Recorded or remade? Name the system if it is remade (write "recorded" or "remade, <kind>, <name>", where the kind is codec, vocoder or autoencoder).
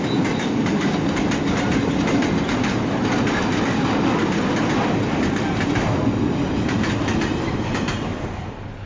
recorded